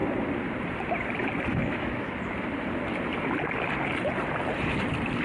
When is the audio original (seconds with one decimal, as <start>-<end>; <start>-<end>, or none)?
0.0-1.5; 2.1-5.2